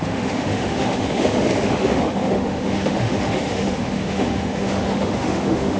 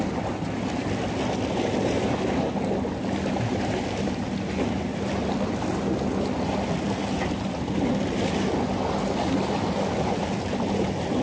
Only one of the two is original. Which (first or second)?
second